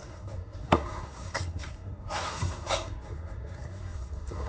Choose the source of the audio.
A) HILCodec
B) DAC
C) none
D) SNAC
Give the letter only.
D